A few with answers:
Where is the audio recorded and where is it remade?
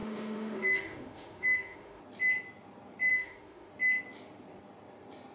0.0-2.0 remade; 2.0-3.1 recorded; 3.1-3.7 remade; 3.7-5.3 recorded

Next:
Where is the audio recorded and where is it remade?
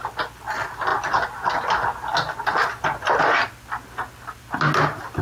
0.0-5.2 recorded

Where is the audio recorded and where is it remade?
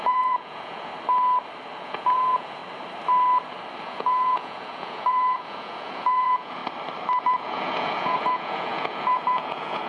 0.0-0.9 remade; 0.9-1.8 recorded; 1.8-2.6 remade; 2.6-3.8 recorded; 3.8-6.6 remade; 6.6-7.2 recorded; 7.2-9.9 remade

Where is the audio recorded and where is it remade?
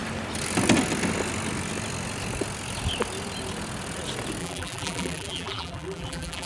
0.0-4.4 recorded; 4.4-6.5 remade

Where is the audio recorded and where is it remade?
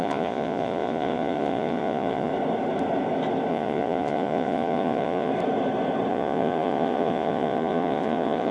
0.0-2.3 remade; 2.3-3.5 recorded; 3.5-5.3 remade; 5.3-6.1 recorded; 6.1-8.5 remade